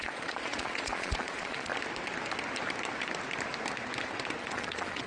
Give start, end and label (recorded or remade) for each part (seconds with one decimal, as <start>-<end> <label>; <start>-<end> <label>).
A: 0.0-1.7 remade; 1.7-4.4 recorded; 4.4-5.1 remade